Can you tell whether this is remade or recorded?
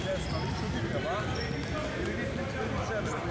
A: recorded